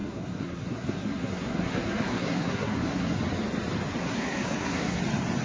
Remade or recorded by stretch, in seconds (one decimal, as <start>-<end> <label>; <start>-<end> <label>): 0.0-3.2 remade; 3.2-4.0 recorded; 4.0-5.0 remade; 5.0-5.4 recorded